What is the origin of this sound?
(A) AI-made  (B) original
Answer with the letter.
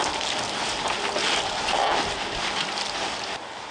B